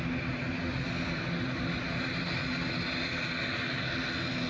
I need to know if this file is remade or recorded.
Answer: recorded